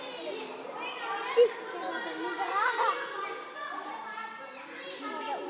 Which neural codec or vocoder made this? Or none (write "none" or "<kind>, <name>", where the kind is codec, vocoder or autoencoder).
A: none